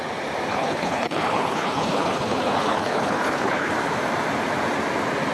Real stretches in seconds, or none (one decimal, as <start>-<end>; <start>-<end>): 0.0-0.5; 3.7-5.3